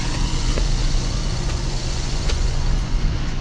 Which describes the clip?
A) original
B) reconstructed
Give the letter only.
B